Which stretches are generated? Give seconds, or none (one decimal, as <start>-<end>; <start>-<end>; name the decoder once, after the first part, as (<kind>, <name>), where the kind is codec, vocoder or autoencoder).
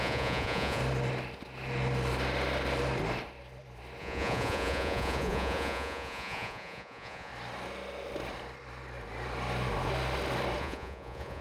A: 0.0-0.8 (vocoder, Vocos); 4.0-7.3; 10.6-11.4